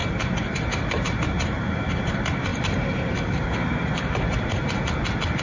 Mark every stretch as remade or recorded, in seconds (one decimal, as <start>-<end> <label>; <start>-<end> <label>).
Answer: 0.0-4.6 remade; 4.6-5.4 recorded